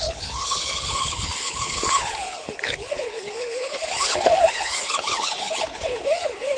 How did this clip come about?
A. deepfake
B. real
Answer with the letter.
A